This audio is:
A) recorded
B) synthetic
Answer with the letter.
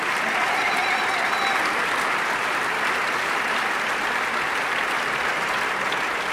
B